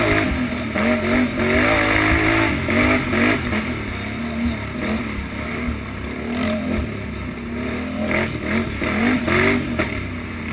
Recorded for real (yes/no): yes